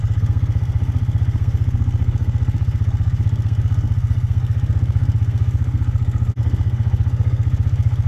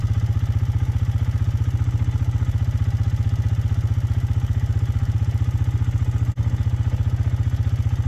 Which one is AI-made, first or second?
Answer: first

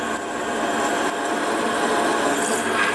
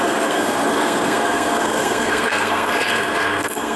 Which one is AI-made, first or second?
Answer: second